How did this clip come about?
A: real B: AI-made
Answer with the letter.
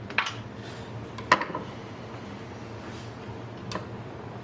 A